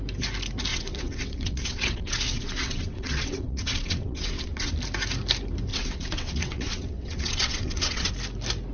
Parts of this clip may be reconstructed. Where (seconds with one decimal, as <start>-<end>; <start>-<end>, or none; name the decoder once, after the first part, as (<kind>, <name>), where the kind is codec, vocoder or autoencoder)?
0.7-4.7 (vocoder, WaveNeXt); 5.7-8.1

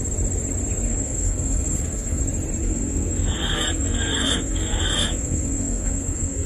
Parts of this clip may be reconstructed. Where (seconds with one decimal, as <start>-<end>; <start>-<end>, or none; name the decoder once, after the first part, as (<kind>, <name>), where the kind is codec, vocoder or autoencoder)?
0.9-2.2 (codec, SNAC); 2.6-6.5

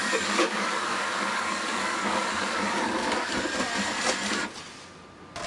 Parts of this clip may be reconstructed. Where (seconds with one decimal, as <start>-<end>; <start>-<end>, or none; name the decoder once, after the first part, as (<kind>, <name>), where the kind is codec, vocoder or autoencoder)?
0.0-3.3 (codec, DAC)

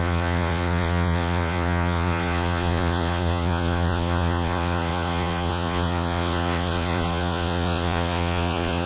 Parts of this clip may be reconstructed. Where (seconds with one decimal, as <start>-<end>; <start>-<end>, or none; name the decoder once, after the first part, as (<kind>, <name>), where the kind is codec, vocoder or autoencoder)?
0.0-8.9 (vocoder, Vocos)

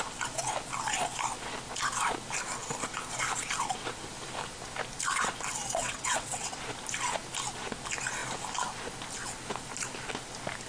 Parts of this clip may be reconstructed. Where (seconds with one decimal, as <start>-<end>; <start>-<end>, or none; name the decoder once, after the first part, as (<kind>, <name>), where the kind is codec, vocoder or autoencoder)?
5.6-6.6 (vocoder, WaveNeXt)

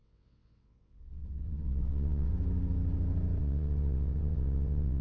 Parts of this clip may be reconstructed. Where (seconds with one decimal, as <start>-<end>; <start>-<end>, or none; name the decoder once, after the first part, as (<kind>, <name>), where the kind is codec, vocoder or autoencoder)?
0.0-2.3 (vocoder, WaveNeXt); 3.4-5.0